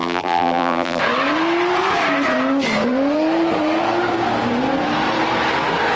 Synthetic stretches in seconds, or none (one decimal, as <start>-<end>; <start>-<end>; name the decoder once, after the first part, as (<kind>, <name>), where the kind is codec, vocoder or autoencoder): 0.0-1.0 (vocoder, BigVGAN v2)